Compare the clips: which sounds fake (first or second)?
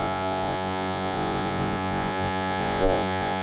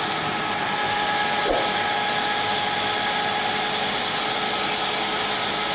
first